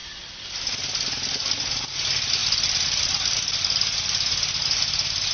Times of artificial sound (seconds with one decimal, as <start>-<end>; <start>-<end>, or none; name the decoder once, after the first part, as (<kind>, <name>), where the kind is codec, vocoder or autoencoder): none